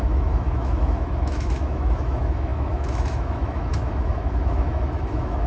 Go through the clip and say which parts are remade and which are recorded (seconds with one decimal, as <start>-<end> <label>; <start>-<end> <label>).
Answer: 0.0-5.5 remade